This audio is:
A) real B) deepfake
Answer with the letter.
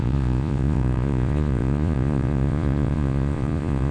B